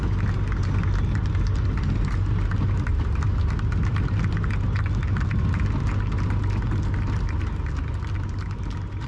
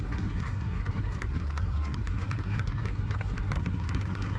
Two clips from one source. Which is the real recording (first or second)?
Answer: first